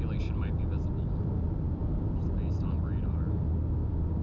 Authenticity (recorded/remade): recorded